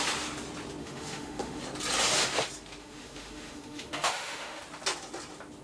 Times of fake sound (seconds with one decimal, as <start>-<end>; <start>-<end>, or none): 0.8-1.6; 2.8-4.6